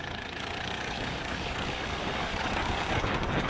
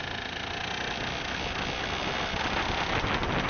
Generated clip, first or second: first